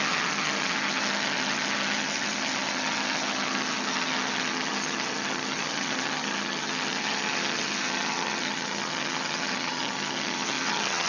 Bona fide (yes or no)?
no